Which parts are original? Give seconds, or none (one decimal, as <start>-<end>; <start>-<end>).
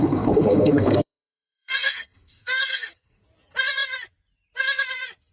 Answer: 3.2-5.3